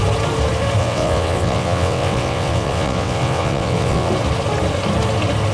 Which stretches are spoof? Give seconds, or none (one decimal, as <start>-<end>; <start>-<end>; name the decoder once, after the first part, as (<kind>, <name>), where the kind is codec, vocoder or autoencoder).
0.8-4.1 (vocoder, WaveNeXt)